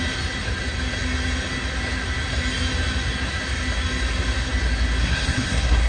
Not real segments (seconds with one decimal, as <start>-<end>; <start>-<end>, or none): 5.0-5.9